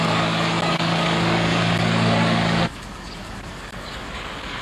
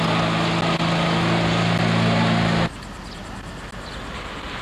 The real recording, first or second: second